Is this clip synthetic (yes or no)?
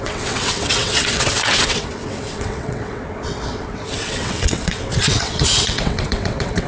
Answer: yes